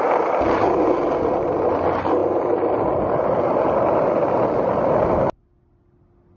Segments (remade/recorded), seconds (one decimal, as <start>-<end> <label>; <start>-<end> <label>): 0.0-6.4 recorded